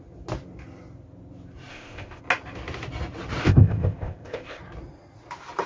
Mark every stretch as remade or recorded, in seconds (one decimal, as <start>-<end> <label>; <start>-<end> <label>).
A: 0.0-1.7 recorded; 1.7-2.2 remade; 2.2-3.4 recorded; 3.4-4.6 remade; 4.6-5.7 recorded